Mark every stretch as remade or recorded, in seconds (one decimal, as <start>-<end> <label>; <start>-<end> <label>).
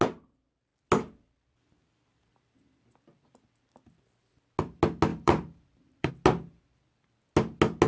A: 0.0-5.1 recorded; 5.1-6.1 remade; 6.1-7.9 recorded